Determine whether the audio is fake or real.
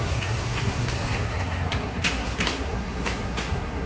fake